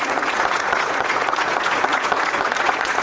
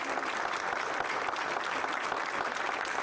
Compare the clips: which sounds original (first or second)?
second